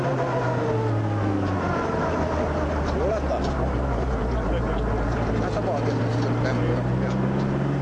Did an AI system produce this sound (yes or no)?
no